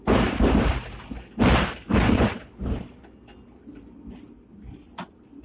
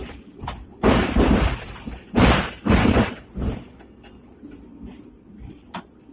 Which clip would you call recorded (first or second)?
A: first